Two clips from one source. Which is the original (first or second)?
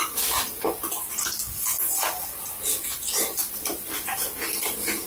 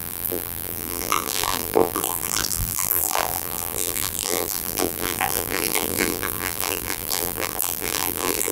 first